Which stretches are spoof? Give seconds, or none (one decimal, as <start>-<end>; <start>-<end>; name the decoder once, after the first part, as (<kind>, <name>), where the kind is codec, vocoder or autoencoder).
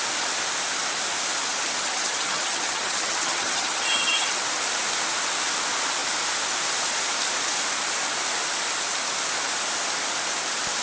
1.8-4.4 (vocoder, HiFi-GAN)